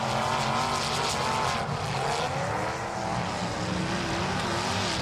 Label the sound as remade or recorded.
recorded